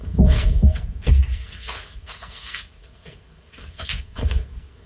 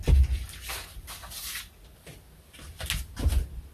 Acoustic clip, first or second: second